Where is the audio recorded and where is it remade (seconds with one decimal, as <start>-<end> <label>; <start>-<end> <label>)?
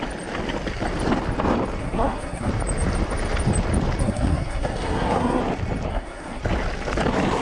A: 0.0-1.8 recorded; 1.8-2.5 remade; 2.5-4.0 recorded; 4.0-5.4 remade; 5.4-5.9 recorded; 5.9-6.4 remade; 6.4-7.4 recorded